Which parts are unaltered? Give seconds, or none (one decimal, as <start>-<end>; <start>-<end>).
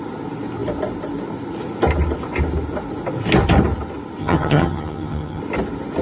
0.0-4.2; 5.4-6.0